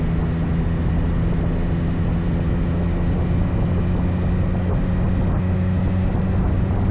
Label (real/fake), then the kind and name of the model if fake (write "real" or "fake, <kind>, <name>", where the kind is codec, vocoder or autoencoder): real